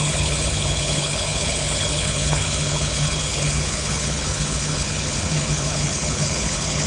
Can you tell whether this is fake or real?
fake